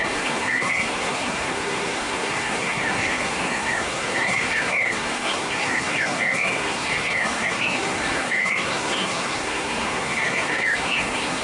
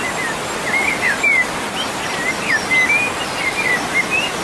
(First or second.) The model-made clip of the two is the first